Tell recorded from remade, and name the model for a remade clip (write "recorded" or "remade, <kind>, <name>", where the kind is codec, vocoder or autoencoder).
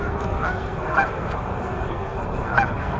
remade, codec, SNAC